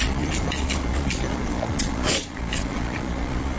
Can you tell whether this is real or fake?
fake